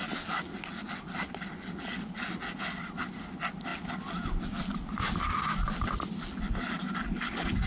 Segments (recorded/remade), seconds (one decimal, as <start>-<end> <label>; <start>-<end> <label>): 0.0-7.7 recorded